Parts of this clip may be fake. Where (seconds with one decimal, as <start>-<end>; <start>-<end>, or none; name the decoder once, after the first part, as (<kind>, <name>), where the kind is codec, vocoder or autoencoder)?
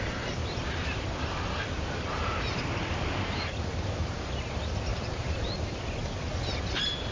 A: 0.4-4.3 (vocoder, BigVGAN v2); 4.9-5.5